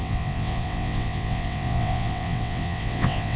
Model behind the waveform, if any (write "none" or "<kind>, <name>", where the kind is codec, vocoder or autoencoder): vocoder, WaveNeXt